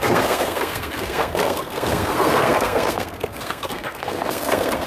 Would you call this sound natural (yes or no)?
no